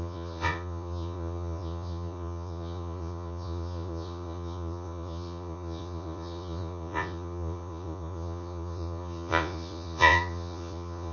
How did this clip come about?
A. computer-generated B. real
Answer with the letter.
A